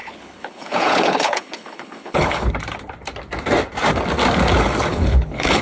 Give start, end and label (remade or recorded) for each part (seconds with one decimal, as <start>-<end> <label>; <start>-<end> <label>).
0.0-2.5 remade; 2.5-4.9 recorded; 4.9-5.6 remade